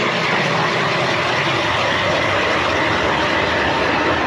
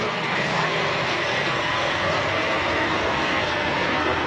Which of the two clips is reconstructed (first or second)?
second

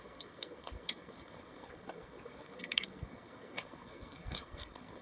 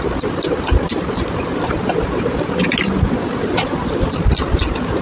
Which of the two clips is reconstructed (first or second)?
first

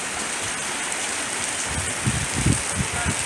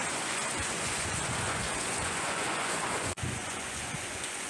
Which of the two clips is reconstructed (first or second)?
second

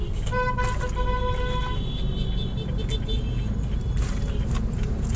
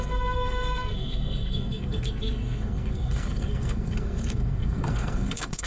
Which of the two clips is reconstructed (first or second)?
second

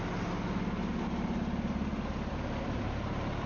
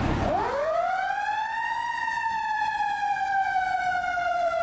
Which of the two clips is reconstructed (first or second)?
second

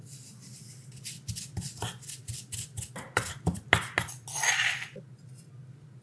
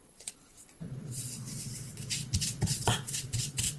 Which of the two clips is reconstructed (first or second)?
second